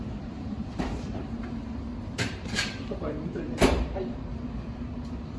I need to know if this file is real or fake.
fake